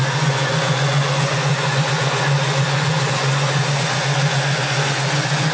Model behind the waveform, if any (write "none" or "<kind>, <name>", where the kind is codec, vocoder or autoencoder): vocoder, Vocos